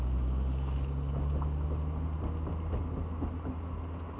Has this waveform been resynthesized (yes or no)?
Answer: no